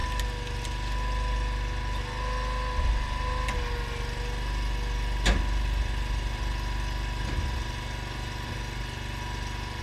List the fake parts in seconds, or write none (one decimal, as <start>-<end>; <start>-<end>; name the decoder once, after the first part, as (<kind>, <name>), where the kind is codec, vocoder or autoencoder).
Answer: none